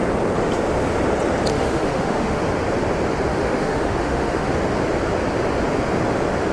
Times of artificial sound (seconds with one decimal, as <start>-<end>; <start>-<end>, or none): 1.5-2.4; 3.3-4.5